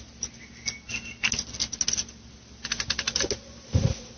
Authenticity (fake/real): real